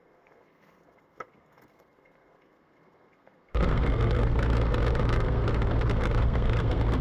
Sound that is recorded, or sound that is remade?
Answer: remade